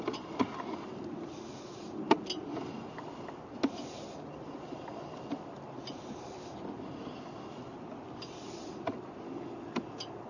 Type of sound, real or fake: real